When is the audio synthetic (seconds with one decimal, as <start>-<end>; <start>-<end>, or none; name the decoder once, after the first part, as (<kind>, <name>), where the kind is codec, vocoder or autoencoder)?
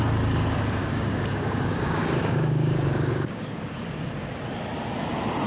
0.8-4.1 (codec, DAC)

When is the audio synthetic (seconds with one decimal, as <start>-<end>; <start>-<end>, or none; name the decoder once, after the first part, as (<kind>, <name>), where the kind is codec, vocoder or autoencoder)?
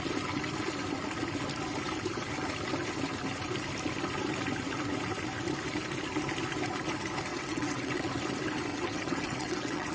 7.3-8.1 (vocoder, WaveNeXt); 8.7-9.9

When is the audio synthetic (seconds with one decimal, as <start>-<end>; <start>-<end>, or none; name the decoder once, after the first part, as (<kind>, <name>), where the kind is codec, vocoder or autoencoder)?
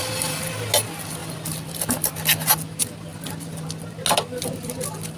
none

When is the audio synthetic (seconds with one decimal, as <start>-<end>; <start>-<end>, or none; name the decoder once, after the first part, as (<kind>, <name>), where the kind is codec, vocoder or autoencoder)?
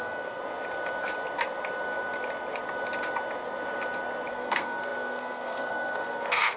0.0-0.4 (codec, SNAC); 4.3-6.6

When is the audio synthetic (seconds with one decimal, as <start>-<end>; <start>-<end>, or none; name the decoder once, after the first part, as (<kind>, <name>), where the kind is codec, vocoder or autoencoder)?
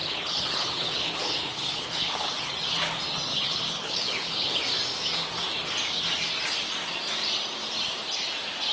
0.0-2.5 (codec, HILCodec); 3.3-4.5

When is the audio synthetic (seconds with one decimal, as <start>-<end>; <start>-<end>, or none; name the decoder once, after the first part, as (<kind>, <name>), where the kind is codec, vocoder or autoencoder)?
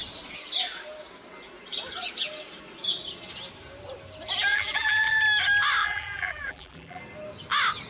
4.5-5.2 (vocoder, BigVGAN v2); 5.8-7.0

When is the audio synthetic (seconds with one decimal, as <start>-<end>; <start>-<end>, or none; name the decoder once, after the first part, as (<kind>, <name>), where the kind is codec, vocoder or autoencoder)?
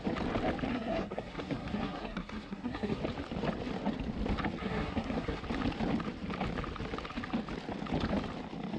0.7-3.0 (codec, SNAC); 4.6-5.4